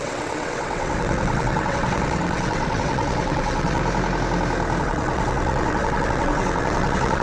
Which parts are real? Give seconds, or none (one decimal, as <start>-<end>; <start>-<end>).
3.8-4.8